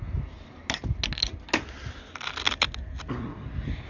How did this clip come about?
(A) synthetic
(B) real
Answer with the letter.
B